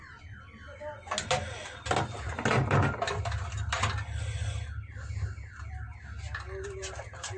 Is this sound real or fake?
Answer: real